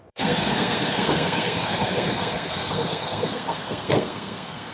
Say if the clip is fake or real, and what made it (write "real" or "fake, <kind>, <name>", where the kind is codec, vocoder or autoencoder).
fake, codec, SNAC